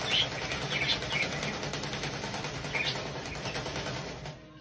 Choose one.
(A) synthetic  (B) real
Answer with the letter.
B